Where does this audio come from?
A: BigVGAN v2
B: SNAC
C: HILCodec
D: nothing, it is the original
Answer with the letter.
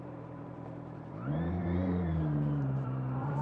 A